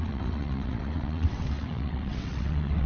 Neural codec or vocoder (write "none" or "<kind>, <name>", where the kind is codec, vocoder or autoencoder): vocoder, WaveNeXt